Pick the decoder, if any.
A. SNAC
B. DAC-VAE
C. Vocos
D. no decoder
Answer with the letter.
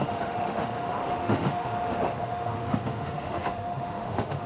B